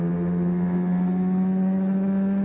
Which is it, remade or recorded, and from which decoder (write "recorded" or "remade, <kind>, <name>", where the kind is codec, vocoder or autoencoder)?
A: recorded